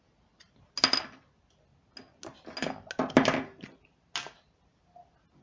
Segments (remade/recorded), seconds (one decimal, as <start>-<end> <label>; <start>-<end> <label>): 0.0-5.4 recorded